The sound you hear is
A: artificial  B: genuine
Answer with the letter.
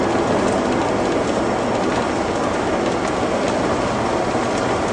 B